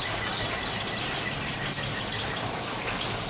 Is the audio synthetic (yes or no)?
no